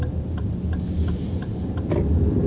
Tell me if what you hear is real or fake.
real